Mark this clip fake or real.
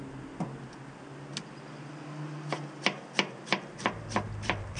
real